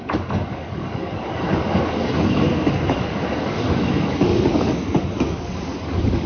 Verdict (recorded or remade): remade